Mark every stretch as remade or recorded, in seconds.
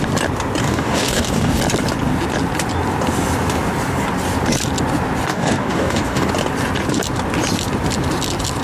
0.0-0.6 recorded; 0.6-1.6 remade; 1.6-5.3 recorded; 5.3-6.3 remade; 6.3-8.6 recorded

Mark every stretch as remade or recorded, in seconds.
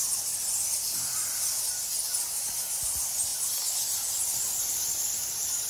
0.0-5.7 recorded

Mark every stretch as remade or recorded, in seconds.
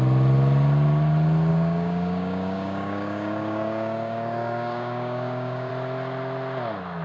0.0-1.5 recorded; 1.5-5.7 remade; 5.7-7.0 recorded